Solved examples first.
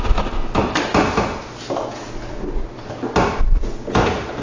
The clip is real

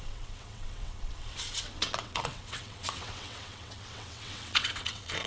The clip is fake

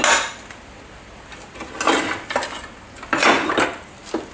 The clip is real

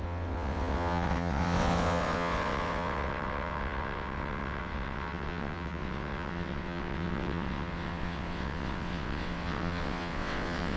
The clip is fake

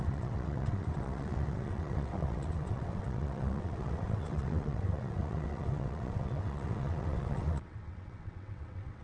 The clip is fake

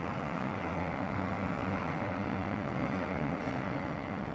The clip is fake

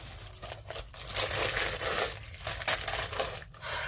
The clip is real